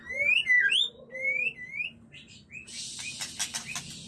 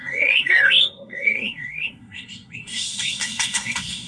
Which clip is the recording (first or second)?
first